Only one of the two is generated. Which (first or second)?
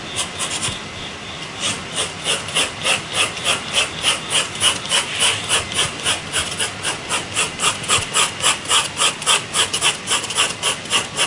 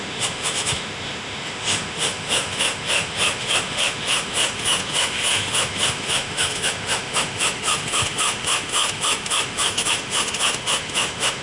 second